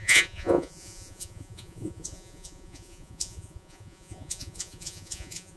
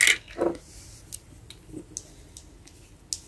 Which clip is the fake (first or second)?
first